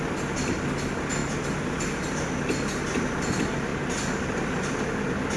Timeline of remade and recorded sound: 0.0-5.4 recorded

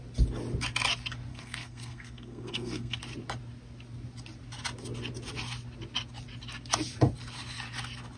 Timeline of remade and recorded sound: 0.0-1.3 recorded; 1.3-3.0 remade; 3.0-8.2 recorded

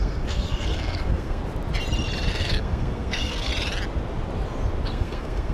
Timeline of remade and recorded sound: 0.0-1.4 remade; 1.4-2.3 recorded; 2.3-3.5 remade; 3.5-4.9 recorded; 4.9-5.5 remade

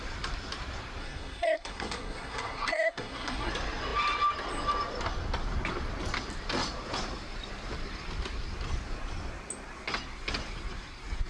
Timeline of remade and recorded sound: 0.0-1.0 recorded; 1.0-3.5 remade; 3.5-11.3 recorded

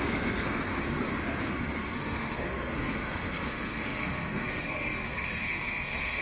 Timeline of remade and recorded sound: 0.0-0.7 remade; 0.7-1.5 recorded; 1.5-6.2 remade

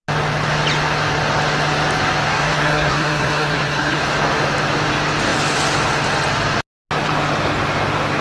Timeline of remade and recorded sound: 0.0-2.3 recorded; 2.3-4.0 remade; 4.0-8.2 recorded